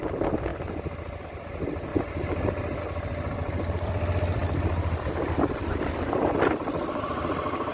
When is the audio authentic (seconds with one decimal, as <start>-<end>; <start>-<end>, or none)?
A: 0.5-1.2; 1.9-2.8